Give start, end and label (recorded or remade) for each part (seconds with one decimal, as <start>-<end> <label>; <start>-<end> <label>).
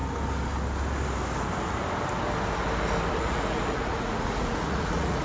0.0-3.1 recorded; 3.1-5.2 remade